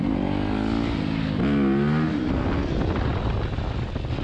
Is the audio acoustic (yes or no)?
yes